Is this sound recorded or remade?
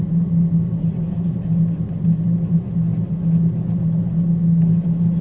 recorded